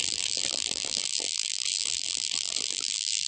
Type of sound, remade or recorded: remade